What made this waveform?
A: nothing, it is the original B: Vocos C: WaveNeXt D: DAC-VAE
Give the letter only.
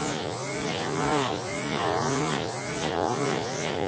B